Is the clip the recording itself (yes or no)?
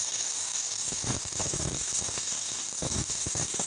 no